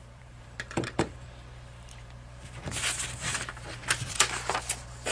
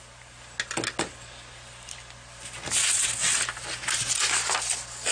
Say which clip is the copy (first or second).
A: first